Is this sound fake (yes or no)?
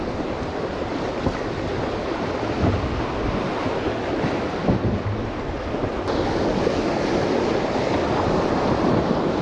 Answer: no